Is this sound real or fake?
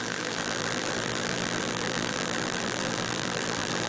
fake